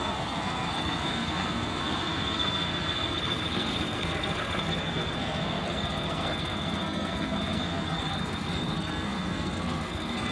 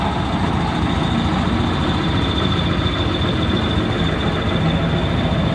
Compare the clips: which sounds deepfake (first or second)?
first